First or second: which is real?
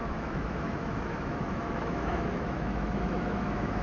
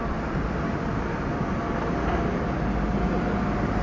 second